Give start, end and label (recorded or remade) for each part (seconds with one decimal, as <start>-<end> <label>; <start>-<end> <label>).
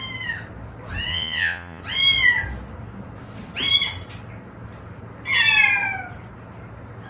0.0-1.1 recorded; 1.1-1.8 remade; 1.8-7.1 recorded